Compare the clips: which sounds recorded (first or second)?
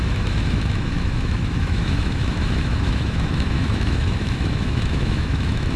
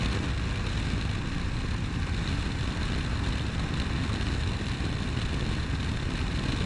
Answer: second